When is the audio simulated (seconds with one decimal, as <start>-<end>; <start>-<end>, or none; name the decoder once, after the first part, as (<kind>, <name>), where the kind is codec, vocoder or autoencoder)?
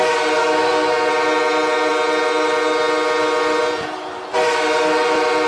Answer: 0.4-1.1 (codec, SNAC)